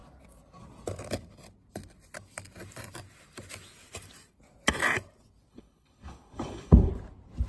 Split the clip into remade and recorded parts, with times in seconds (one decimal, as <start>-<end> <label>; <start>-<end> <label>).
0.0-5.5 recorded; 5.5-6.9 remade; 6.9-7.5 recorded